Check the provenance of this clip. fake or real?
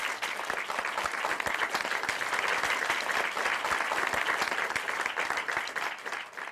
real